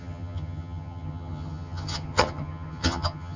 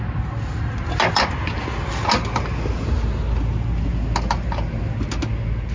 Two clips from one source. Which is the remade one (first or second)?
first